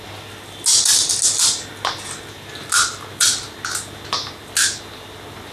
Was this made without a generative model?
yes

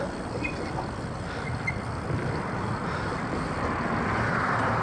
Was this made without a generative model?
no